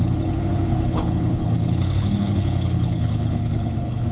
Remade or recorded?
remade